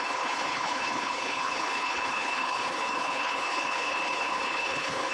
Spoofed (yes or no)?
yes